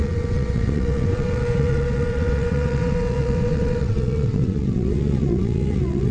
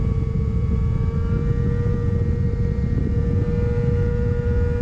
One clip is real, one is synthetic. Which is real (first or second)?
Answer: second